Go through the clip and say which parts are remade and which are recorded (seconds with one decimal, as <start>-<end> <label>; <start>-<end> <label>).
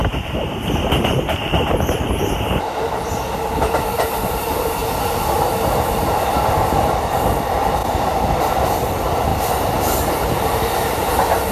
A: 0.0-4.8 remade; 4.8-5.5 recorded; 5.5-9.3 remade; 9.3-10.1 recorded; 10.1-11.5 remade